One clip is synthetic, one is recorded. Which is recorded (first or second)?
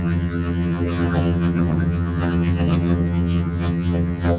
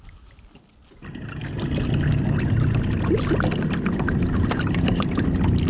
second